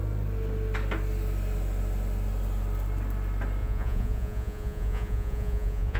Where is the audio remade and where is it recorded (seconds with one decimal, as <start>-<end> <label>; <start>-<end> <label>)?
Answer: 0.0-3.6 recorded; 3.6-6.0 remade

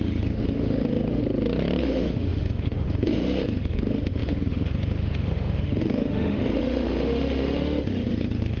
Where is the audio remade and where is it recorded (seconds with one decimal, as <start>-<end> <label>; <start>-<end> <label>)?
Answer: 0.0-1.2 remade; 1.2-1.8 recorded; 1.8-8.6 remade

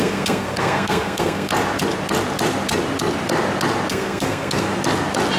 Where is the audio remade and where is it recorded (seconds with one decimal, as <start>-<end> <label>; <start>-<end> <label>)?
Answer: 0.0-1.5 remade; 1.5-3.9 recorded; 3.9-4.7 remade; 4.7-5.4 recorded